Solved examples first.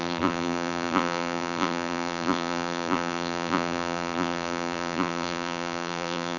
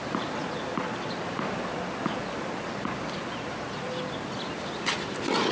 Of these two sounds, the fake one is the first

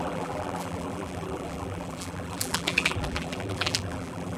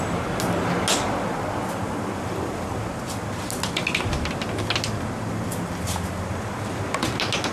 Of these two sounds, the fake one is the first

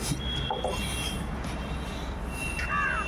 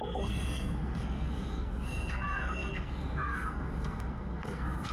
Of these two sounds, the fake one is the second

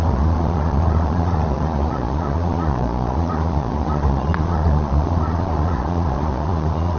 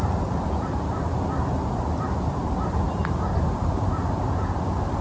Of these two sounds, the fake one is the first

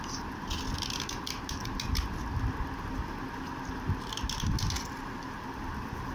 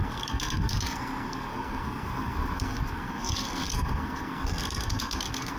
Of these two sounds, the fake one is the second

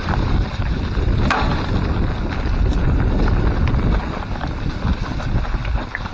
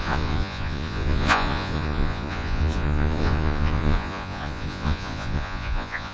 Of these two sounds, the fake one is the second